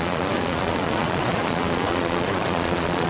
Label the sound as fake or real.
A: fake